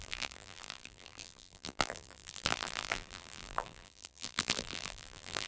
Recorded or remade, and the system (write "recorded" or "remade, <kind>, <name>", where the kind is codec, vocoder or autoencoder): remade, vocoder, BigVGAN v2